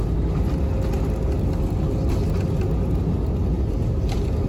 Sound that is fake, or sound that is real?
real